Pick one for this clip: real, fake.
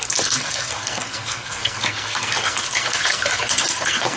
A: fake